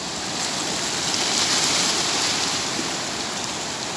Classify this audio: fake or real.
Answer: real